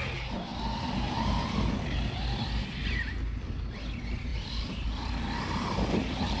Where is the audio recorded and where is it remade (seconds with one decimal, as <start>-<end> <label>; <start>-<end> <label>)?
0.0-4.3 recorded; 4.3-6.4 remade